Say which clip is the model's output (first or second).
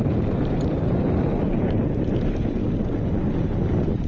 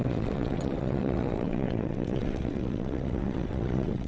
second